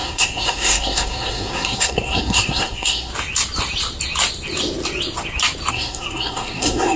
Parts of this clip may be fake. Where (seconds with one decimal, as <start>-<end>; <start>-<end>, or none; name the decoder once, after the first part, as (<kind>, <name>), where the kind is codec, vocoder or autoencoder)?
0.0-3.1 (codec, SNAC); 5.7-7.0